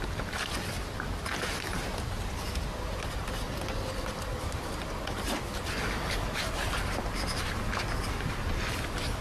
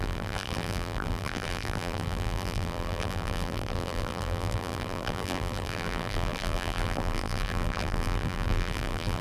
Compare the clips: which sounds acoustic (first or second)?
first